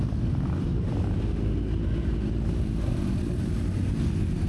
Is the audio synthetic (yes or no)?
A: no